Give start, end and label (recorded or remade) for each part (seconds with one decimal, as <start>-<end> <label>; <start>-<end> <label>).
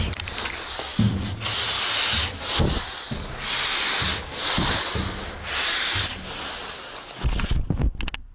0.0-8.3 recorded